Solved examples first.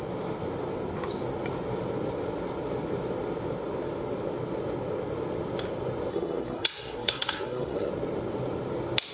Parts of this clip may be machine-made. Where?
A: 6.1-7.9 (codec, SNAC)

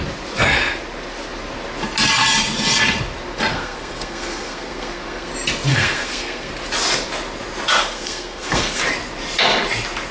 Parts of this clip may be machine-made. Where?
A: 3.5-5.3 (codec, SNAC); 5.7-6.5; 7.8-8.8

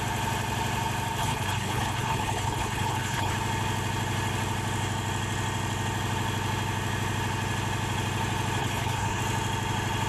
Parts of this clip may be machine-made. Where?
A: 1.2-3.3 (codec, HILCodec); 8.6-9.2